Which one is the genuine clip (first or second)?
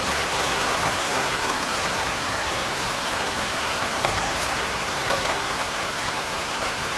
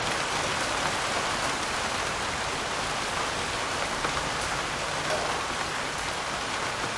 second